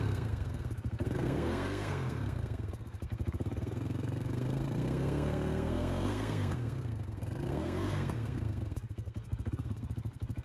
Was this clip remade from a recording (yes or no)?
yes